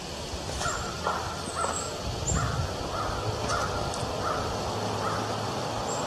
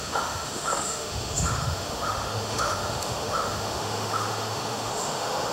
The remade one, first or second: second